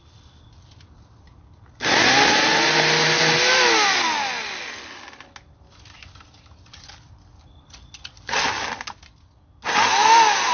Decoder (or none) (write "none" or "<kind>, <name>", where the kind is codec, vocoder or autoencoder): none